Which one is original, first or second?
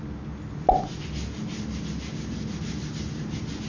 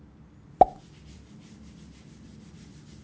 first